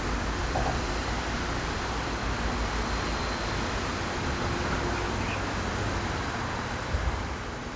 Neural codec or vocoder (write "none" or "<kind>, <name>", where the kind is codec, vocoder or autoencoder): none